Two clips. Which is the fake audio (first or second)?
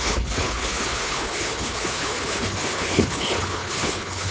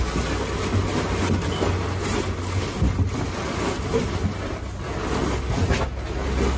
first